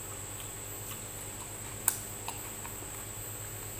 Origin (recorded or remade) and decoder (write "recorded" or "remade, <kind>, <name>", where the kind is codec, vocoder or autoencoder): recorded